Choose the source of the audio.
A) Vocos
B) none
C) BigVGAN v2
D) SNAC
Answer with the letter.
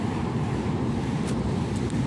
B